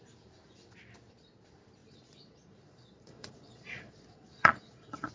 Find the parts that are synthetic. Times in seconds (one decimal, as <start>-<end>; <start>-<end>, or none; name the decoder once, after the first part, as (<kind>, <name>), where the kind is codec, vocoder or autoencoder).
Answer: 1.8-5.1 (vocoder, Vocos)